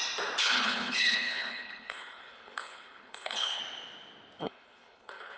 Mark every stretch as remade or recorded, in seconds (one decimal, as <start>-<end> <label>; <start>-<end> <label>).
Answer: 0.0-0.4 recorded; 0.4-3.6 remade; 3.6-4.4 recorded; 4.4-5.4 remade